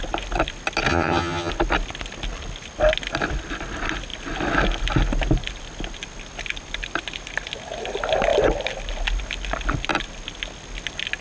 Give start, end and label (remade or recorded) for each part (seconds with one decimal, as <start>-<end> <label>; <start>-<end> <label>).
0.0-0.9 recorded; 0.9-1.5 remade; 1.5-11.2 recorded